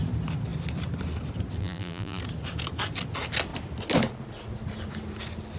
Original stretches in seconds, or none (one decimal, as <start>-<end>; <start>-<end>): 0.0-1.6; 2.2-5.6